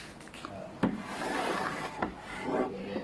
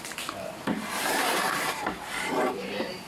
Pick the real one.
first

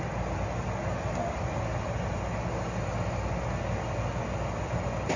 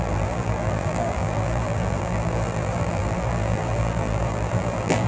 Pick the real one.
first